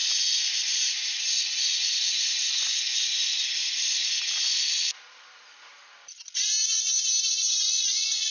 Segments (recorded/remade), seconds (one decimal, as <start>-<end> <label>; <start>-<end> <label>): 0.0-3.1 remade; 3.1-7.5 recorded; 7.5-8.3 remade